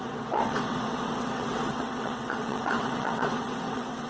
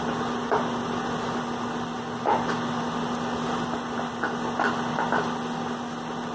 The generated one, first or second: first